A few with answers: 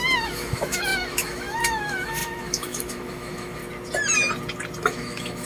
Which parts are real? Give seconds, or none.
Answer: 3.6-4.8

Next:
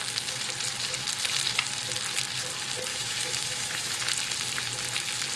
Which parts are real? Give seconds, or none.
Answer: 0.0-2.9; 4.0-5.4